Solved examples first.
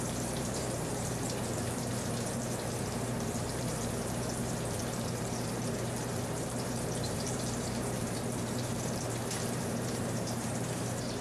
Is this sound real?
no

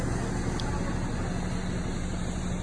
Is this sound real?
yes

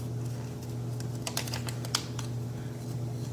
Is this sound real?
yes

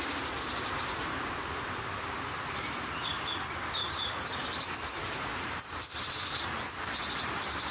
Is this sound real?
no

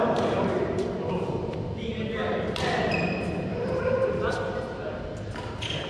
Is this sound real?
no